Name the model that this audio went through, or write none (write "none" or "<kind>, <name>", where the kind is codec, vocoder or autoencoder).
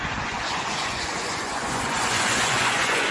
vocoder, Vocos